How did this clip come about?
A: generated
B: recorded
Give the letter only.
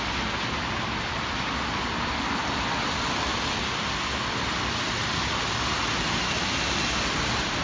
B